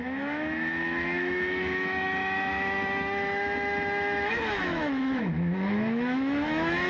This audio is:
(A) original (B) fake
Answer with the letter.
B